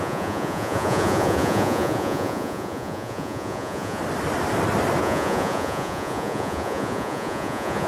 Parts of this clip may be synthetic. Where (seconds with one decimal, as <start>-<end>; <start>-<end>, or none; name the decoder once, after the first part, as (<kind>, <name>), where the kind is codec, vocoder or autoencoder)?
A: 0.0-4.0 (vocoder, Vocos); 5.0-7.9